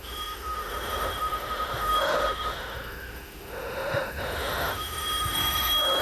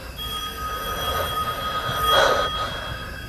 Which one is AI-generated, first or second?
first